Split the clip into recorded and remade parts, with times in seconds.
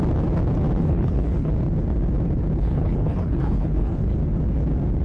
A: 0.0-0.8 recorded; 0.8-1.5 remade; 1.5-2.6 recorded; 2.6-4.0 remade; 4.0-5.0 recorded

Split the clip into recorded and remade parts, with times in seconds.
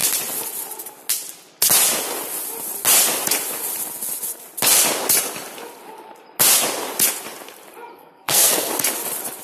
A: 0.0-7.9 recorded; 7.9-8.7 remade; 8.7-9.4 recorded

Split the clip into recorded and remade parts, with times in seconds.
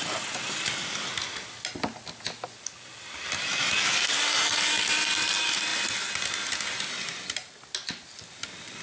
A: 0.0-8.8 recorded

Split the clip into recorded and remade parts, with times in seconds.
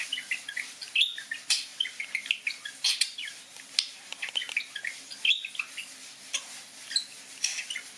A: 0.0-8.0 recorded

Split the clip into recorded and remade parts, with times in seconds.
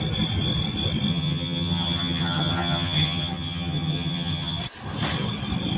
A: 0.0-1.1 recorded; 1.1-4.6 remade; 4.6-5.8 recorded